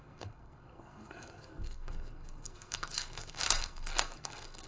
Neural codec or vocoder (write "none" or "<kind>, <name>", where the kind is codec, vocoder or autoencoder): codec, SNAC